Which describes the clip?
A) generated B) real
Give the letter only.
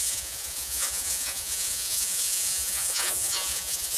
A